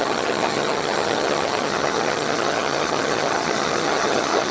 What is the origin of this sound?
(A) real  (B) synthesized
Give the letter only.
B